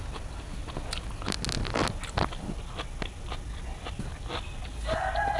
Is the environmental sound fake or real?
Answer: real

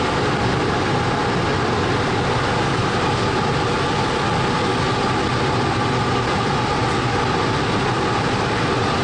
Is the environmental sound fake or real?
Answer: real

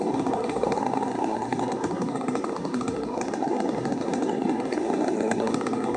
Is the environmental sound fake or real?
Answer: fake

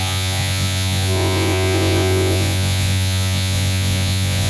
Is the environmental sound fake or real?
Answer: fake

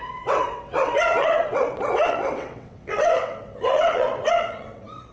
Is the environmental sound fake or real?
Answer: fake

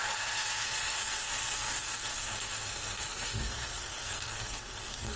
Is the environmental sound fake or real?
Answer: fake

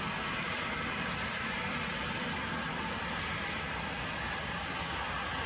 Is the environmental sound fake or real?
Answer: real